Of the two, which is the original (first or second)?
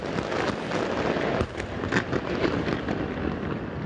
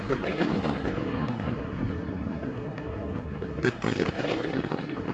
first